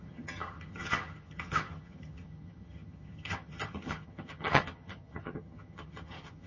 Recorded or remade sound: remade